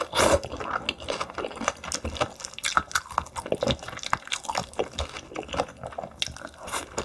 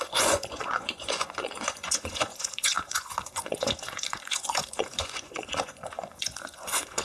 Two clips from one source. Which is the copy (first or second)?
second